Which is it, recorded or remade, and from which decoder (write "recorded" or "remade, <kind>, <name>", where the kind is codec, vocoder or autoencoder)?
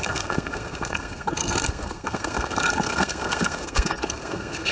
remade, codec, SNAC